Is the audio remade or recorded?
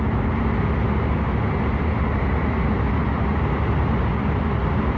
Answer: recorded